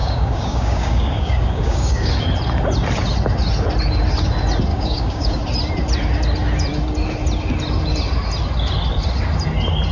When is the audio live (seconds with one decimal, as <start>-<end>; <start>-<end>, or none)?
2.1-4.7; 5.4-9.9